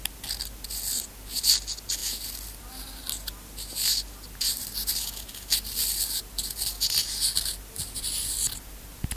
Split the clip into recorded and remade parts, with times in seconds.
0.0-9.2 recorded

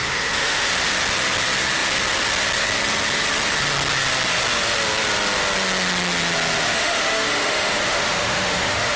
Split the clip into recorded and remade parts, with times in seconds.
0.0-0.7 remade; 0.7-6.7 recorded; 6.7-9.0 remade

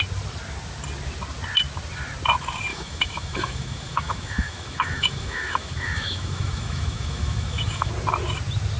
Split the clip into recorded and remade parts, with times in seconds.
0.0-2.7 recorded; 2.7-7.9 remade; 7.9-8.8 recorded

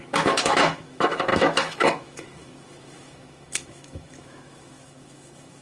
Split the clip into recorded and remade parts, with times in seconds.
0.0-5.6 remade

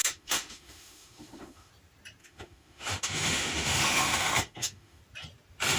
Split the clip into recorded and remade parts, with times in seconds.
0.0-1.7 remade; 1.7-2.2 recorded; 2.2-5.0 remade; 5.0-5.8 recorded

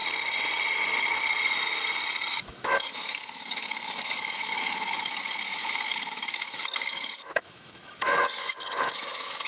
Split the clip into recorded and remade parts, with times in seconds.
0.0-2.3 recorded; 2.3-9.5 remade

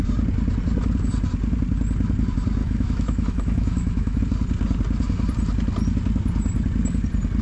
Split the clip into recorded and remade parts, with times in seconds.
0.0-2.6 recorded; 2.6-4.2 remade; 4.2-7.4 recorded

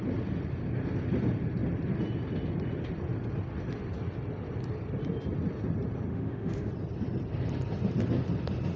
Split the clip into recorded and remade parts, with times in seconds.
0.0-6.1 recorded; 6.1-6.7 remade; 6.7-8.8 recorded